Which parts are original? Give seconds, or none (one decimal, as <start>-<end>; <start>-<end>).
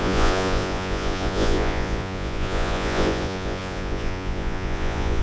none